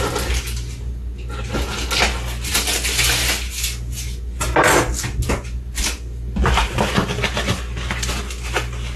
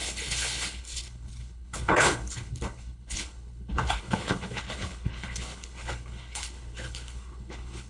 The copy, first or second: second